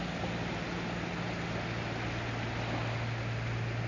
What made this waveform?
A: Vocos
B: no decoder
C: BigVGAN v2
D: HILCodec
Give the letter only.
B